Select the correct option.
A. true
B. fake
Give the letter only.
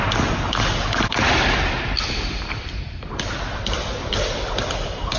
A